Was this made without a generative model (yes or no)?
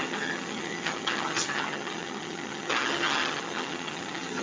no